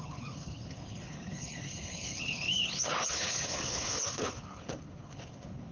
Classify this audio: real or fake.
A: fake